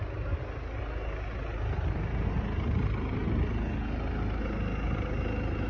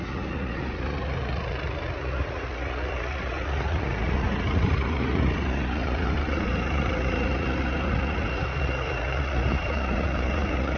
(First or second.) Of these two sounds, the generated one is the second